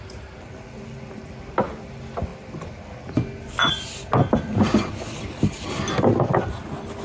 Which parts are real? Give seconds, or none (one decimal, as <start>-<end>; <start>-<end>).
0.0-7.0